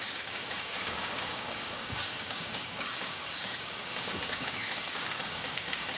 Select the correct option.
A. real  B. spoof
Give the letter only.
B